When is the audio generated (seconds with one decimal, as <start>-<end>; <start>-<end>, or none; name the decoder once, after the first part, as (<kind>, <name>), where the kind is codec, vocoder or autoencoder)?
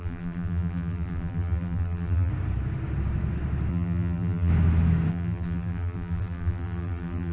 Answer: 0.0-2.3 (vocoder, BigVGAN v2); 3.7-4.5; 5.1-7.3